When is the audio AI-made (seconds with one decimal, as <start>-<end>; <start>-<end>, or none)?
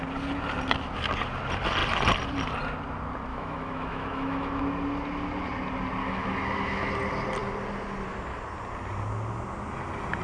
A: 3.3-4.6; 6.0-6.9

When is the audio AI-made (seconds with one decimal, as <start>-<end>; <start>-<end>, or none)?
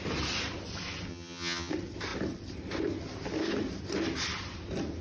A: 1.1-1.7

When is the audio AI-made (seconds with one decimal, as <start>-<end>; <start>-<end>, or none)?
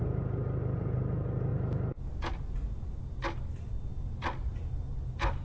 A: none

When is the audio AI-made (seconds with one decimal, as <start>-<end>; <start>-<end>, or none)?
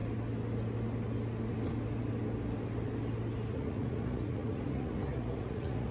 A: 3.5-5.9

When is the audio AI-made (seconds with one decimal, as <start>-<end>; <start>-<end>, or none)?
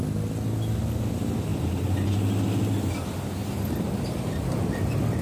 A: none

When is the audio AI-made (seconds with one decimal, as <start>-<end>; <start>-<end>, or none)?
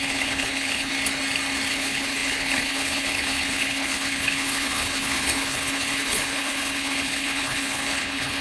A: 0.0-0.9; 1.7-8.4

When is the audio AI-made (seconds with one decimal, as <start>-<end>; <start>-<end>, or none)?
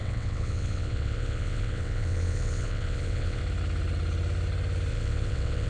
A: 0.0-3.4; 4.9-5.7